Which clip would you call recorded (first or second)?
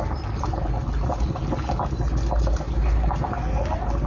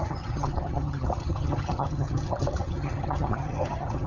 first